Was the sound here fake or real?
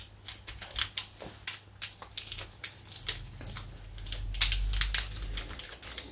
real